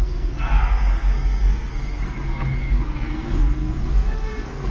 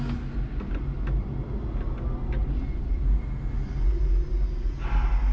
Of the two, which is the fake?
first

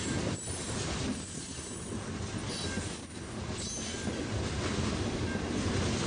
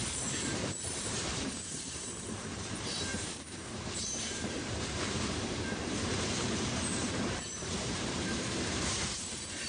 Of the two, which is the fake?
second